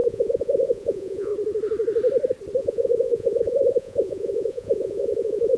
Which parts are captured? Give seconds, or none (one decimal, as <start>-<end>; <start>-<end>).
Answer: 1.3-2.6